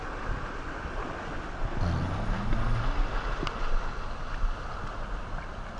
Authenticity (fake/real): real